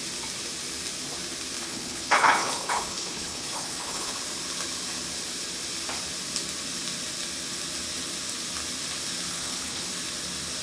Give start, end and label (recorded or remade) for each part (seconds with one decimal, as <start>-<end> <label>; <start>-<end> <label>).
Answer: 0.0-1.6 recorded; 1.6-4.2 remade; 4.2-9.3 recorded; 9.3-9.9 remade; 9.9-10.6 recorded